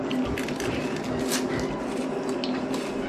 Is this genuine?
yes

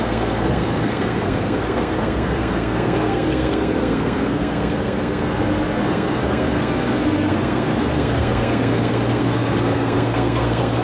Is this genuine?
no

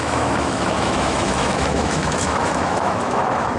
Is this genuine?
no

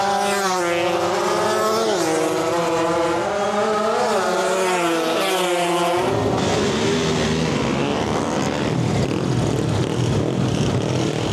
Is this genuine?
yes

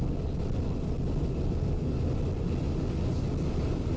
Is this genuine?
yes